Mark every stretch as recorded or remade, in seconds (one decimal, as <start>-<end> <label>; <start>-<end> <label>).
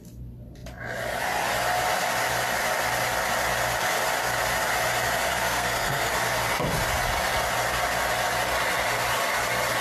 0.0-5.3 recorded; 5.3-6.1 remade; 6.1-9.8 recorded